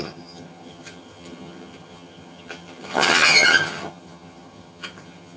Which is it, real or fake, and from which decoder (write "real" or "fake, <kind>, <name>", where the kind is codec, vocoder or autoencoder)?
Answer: fake, vocoder, HiFi-GAN